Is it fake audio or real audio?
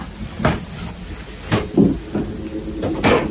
real